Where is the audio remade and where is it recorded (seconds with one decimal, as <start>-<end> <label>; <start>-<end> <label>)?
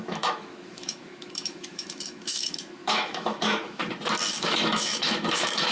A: 0.0-3.8 remade; 3.8-4.4 recorded; 4.4-5.7 remade